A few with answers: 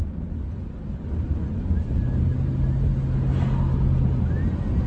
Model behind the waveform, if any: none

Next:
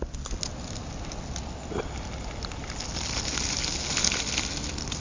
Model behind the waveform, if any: none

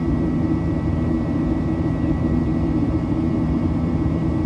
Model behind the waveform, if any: vocoder, BigVGAN v2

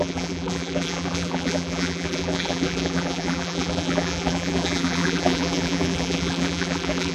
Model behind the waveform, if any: vocoder, BigVGAN v2